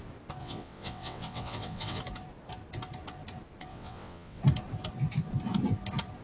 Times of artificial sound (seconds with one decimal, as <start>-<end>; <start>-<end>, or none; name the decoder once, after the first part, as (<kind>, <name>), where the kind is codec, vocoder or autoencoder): 0.4-2.0 (vocoder, WaveNeXt); 3.7-4.4

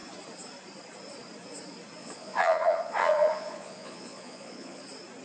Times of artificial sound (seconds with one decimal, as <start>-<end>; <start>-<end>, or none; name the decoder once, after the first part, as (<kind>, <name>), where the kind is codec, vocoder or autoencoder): 2.0-4.8 (vocoder, Vocos)

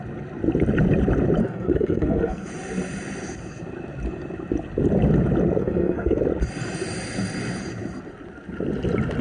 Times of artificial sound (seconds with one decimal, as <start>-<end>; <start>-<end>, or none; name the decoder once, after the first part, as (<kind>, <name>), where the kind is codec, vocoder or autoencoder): 1.4-2.5 (codec, SNAC); 5.6-6.2

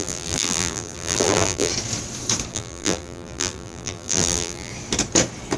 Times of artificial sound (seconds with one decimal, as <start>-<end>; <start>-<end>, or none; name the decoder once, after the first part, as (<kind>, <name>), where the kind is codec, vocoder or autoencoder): 0.0-1.7 (vocoder, BigVGAN v2); 2.5-4.7

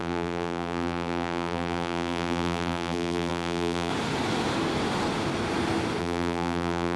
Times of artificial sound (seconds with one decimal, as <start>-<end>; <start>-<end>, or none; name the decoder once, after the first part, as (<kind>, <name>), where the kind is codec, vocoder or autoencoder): 0.0-3.9 (vocoder, BigVGAN v2); 6.0-7.0